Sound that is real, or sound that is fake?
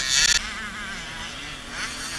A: real